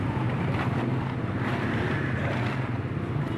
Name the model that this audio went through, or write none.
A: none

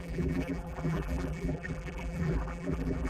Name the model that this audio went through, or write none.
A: vocoder, BigVGAN v2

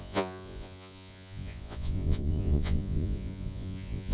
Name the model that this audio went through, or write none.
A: vocoder, Vocos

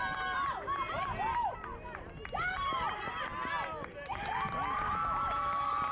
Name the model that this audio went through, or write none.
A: none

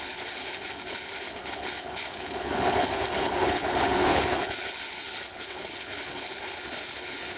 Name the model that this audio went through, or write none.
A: codec, HILCodec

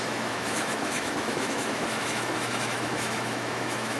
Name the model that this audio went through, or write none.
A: autoencoder, DAC-VAE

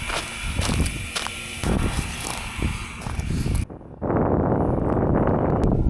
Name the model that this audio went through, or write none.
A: none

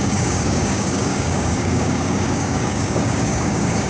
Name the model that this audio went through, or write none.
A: codec, DAC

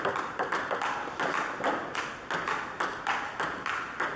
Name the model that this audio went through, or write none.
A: none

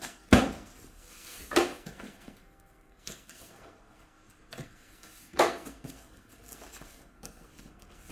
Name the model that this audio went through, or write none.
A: codec, SNAC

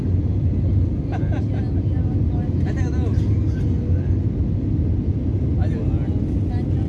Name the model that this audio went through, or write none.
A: none